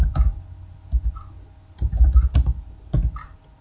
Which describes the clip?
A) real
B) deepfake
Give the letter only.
A